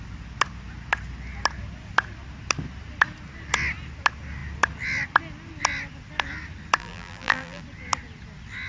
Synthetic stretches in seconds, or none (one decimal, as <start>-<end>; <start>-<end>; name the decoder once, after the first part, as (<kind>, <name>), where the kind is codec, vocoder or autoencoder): 6.8-7.6 (vocoder, BigVGAN v2)